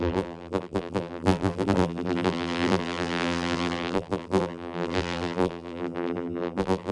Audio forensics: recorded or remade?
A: remade